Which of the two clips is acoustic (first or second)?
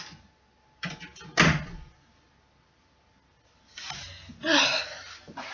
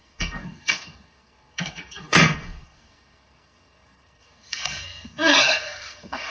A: first